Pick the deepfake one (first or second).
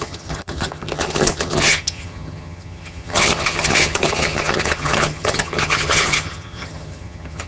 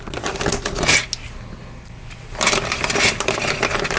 first